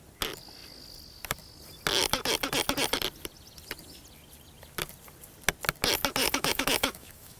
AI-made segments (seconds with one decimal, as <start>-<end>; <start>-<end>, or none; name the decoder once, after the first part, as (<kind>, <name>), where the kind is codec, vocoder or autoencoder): 6.2-7.4 (autoencoder, DAC-VAE)